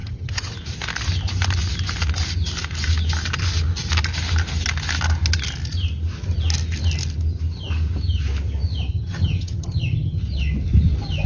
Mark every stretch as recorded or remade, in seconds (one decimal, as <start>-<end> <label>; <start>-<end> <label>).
0.0-0.5 remade; 0.5-8.9 recorded; 8.9-10.2 remade; 10.2-11.3 recorded